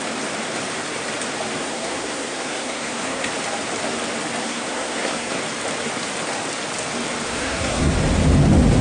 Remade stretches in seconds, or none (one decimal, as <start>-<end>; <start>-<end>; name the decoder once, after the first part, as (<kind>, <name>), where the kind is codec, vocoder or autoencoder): 1.6-3.3 (codec, SNAC); 4.4-5.4; 7.3-7.9

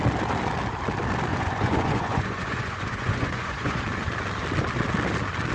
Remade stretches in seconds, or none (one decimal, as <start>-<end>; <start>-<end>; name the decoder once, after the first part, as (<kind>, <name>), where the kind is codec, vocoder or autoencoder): 1.3-3.8 (vocoder, Vocos)

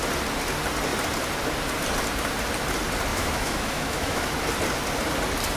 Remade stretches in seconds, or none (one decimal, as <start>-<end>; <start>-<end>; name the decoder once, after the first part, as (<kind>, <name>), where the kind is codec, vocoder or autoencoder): 3.1-4.3 (autoencoder, DAC-VAE)

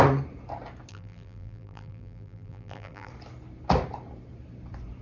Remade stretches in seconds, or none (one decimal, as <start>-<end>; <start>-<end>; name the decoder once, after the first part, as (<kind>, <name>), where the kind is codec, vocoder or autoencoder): 0.9-3.1 (vocoder, BigVGAN v2)